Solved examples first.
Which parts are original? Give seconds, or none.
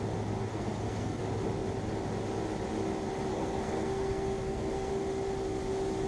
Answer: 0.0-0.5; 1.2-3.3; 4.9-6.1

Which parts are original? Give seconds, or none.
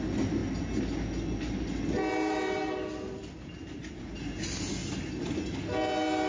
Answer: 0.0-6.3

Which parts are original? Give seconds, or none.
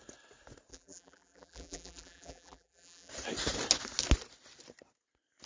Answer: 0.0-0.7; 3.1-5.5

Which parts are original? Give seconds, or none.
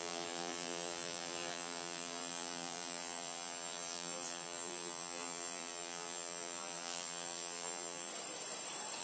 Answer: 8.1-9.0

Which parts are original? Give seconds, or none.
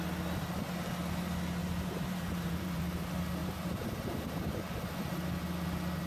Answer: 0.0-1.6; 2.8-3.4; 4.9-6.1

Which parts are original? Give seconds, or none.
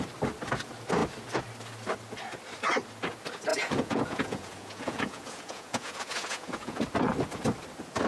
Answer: 0.0-3.5; 6.8-8.1